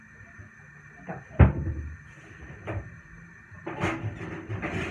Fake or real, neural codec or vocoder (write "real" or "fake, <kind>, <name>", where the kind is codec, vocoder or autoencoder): real